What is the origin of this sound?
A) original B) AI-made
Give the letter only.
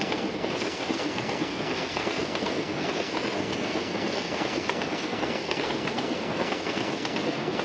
B